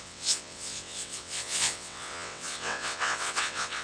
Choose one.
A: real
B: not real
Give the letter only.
B